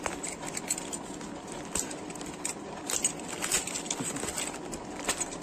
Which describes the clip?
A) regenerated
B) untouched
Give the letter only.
B